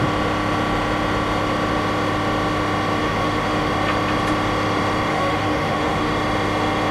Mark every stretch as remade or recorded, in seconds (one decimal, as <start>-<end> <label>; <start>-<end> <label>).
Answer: 0.0-3.0 recorded; 3.0-3.7 remade; 3.7-5.1 recorded; 5.1-6.1 remade; 6.1-6.9 recorded